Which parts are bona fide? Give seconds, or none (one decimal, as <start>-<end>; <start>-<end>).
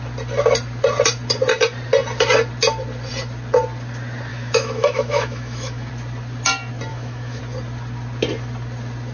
0.0-4.3; 5.9-6.9; 7.4-9.1